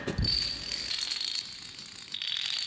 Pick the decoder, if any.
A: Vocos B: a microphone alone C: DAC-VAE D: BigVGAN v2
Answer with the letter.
B